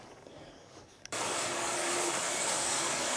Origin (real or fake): fake